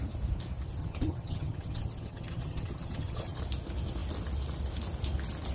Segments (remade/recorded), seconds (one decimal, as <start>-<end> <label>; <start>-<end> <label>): 0.0-0.8 recorded; 0.8-3.4 remade; 3.4-5.5 recorded